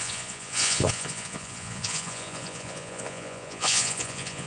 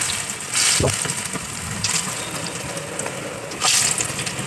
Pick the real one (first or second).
second